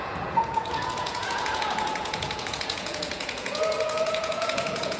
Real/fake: fake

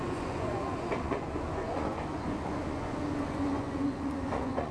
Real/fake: fake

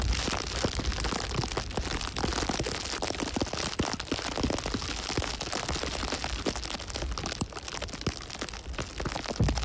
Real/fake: real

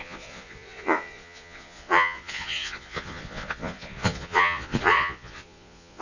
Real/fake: fake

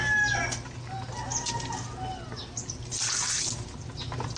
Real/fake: real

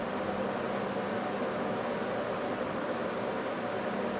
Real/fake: real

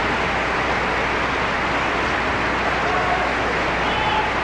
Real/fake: real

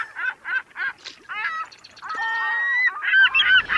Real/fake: real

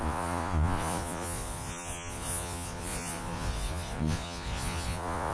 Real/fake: fake